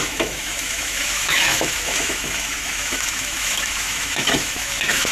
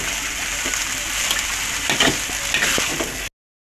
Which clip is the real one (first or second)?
second